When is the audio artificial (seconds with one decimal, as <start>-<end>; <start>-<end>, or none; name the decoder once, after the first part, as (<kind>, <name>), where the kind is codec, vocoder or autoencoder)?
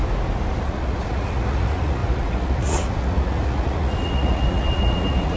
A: 0.6-5.4 (vocoder, Vocos)